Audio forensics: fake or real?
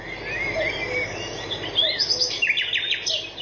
real